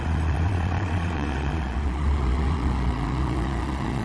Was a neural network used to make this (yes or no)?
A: yes